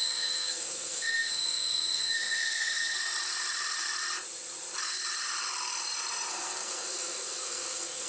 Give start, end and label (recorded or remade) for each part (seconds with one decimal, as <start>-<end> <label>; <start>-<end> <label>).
0.0-3.0 remade; 3.0-6.3 recorded; 6.3-8.1 remade